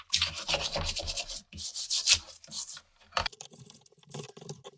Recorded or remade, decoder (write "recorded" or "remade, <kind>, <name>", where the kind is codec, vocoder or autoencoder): recorded